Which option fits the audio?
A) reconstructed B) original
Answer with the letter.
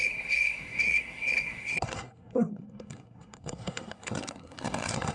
A